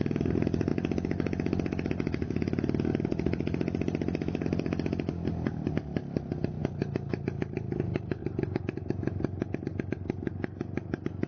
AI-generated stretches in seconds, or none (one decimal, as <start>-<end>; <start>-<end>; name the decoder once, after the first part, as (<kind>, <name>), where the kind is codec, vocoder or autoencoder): none